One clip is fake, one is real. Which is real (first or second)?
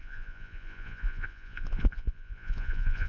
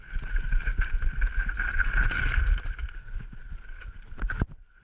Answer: second